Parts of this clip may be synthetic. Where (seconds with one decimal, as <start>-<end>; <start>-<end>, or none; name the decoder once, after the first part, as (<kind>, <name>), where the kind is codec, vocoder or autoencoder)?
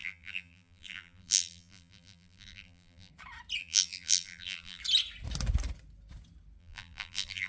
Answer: 0.0-3.1 (vocoder, BigVGAN v2); 3.6-4.8; 6.6-7.5